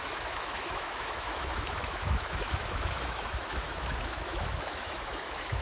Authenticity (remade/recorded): remade